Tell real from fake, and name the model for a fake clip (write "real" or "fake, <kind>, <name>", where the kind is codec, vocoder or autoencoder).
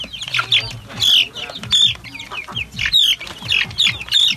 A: real